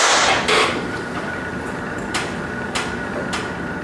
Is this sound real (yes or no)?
yes